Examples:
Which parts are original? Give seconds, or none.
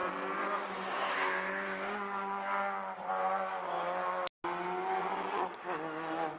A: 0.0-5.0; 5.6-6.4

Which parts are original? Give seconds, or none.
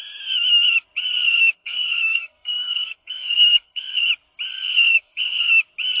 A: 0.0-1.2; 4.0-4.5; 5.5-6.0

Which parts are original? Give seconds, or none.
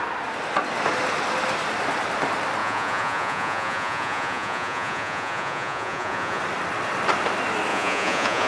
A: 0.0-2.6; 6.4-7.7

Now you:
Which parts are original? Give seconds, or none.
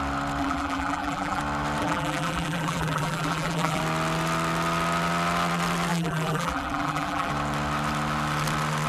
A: 0.0-0.4; 1.4-1.8; 3.8-5.9; 7.3-8.9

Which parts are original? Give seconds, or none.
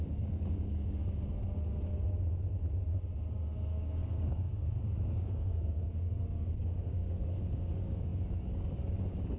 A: 1.0-3.3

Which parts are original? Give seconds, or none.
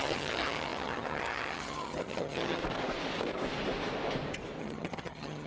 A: 2.6-4.6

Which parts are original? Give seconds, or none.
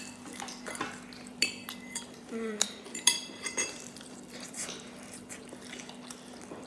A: 0.0-1.3; 5.3-6.7